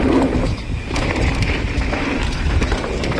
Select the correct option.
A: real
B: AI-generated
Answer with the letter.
A